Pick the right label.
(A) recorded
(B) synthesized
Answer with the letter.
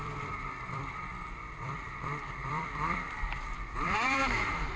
B